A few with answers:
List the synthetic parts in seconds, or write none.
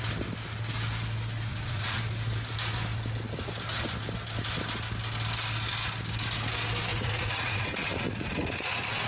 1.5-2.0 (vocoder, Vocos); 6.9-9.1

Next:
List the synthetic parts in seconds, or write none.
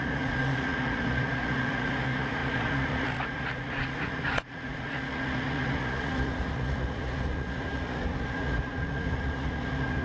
0.0-10.0 (vocoder, Vocos)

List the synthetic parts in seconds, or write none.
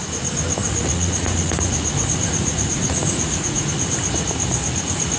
0.6-3.7 (vocoder, Vocos)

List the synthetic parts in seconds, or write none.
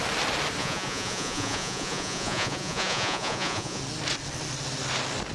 0.6-3.8 (vocoder, Vocos)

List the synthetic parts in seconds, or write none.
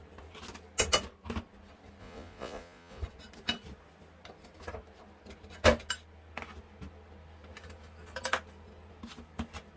2.0-3.0 (vocoder, Vocos)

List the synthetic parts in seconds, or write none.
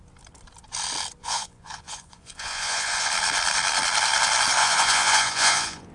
1.2-3.1 (vocoder, Vocos); 4.6-5.9